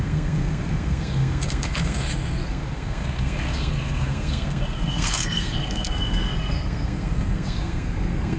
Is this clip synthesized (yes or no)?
yes